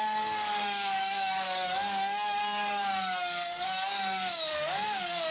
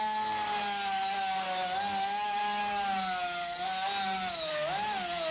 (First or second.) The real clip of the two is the second